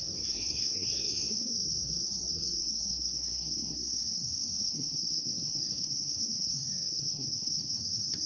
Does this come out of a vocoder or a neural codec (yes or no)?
yes